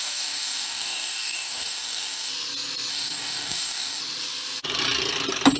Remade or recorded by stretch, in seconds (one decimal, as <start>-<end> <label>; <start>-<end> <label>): 0.0-2.3 remade; 2.3-2.9 recorded; 2.9-4.0 remade; 4.0-5.6 recorded

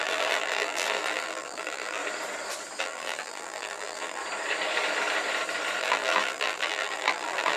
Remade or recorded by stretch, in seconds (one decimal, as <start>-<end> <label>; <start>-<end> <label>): 0.0-2.0 remade; 2.0-2.8 recorded; 2.8-4.2 remade; 4.2-5.8 recorded; 5.8-7.6 remade

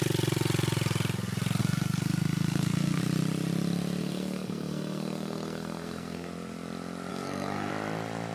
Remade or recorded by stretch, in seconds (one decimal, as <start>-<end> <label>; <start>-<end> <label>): 0.0-1.6 recorded; 1.6-3.0 remade; 3.0-4.0 recorded; 4.0-6.3 remade; 6.3-7.1 recorded; 7.1-7.7 remade; 7.7-8.3 recorded

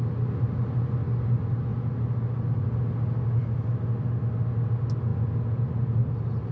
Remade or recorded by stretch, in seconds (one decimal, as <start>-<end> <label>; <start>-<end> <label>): 0.0-6.5 recorded

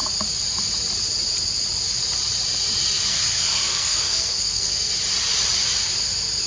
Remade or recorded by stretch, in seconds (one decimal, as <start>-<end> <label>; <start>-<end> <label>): 0.0-3.1 recorded; 3.1-4.9 remade; 4.9-6.5 recorded

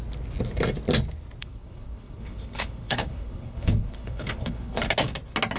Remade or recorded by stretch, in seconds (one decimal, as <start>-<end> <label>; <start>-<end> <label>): 0.0-1.4 recorded; 1.4-4.8 remade; 4.8-5.6 recorded

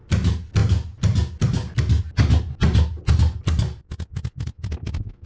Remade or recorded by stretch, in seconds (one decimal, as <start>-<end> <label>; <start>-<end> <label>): 0.0-5.3 recorded